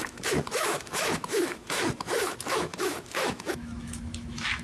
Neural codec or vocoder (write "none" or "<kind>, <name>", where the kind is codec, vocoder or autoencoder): autoencoder, DAC-VAE